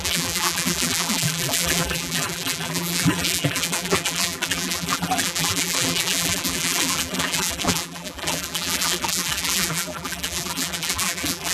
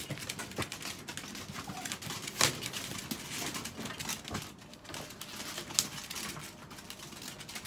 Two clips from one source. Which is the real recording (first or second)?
second